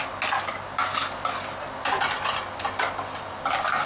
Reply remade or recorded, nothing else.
recorded